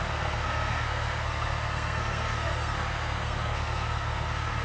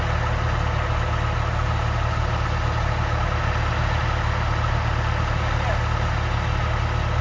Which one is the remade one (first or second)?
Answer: first